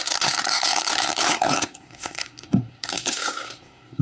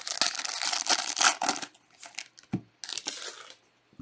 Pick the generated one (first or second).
first